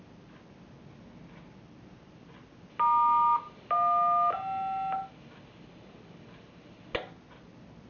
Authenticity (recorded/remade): recorded